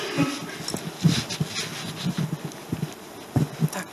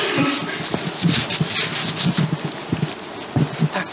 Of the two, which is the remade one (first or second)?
second